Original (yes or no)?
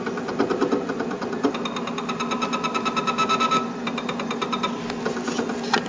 yes